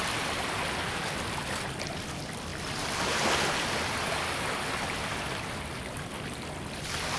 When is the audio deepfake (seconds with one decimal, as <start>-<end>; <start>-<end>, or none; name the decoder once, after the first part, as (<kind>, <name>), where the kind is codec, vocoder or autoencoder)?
none